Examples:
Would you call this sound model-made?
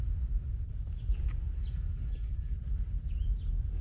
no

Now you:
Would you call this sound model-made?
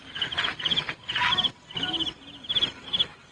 no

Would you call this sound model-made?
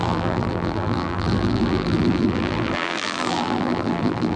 yes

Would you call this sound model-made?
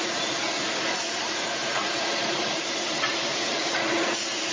yes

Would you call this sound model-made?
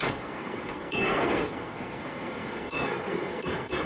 yes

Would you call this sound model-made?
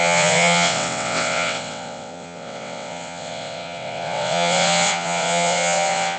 yes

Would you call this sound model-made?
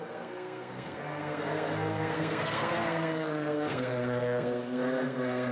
yes